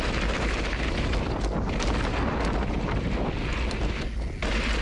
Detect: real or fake real